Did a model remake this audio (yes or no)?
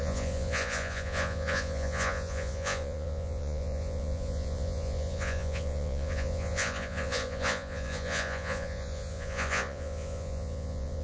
yes